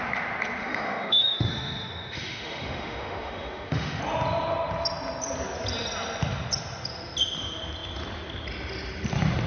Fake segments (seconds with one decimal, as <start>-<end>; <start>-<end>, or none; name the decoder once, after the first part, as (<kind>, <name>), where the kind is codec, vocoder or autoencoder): 0.6-4.0 (autoencoder, DAC-VAE)